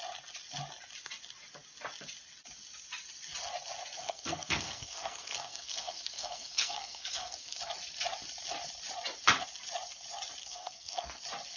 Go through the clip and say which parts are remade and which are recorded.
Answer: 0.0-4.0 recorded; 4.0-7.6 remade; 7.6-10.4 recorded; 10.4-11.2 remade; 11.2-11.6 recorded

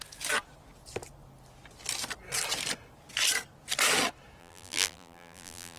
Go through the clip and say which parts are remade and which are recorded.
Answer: 0.0-4.4 recorded; 4.4-5.8 remade

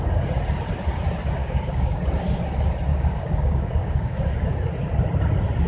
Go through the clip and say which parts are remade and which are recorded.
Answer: 0.0-1.4 recorded; 1.4-2.0 remade; 2.0-2.9 recorded; 2.9-4.5 remade; 4.5-5.7 recorded

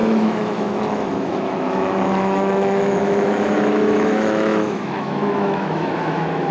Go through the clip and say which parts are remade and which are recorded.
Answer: 0.0-6.5 remade